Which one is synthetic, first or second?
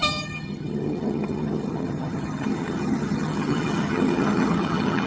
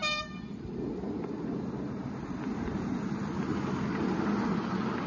first